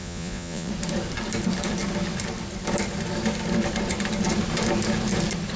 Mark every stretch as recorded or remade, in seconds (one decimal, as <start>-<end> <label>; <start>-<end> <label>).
0.0-0.7 remade; 0.7-5.6 recorded